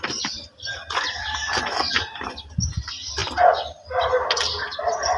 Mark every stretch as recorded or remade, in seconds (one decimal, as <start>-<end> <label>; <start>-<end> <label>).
0.0-5.2 remade